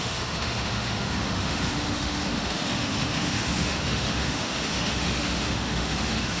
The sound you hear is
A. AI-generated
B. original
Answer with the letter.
A